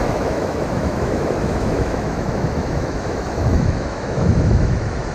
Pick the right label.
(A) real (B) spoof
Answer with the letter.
B